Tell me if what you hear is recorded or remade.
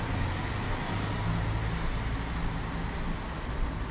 recorded